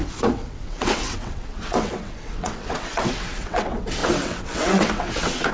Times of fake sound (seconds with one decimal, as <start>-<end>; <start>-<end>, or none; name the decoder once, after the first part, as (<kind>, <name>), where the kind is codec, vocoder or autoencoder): 0.0-5.5 (vocoder, WaveNeXt)